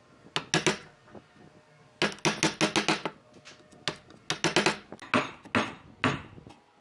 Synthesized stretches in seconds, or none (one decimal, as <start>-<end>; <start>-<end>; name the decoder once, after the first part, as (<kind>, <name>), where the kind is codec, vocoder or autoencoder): none